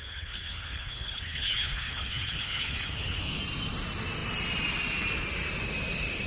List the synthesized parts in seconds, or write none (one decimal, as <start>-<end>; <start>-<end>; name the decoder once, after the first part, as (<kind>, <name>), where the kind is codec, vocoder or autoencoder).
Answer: 0.0-3.4 (codec, HILCodec)